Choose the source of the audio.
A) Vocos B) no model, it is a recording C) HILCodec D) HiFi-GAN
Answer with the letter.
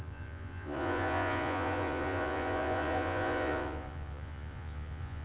A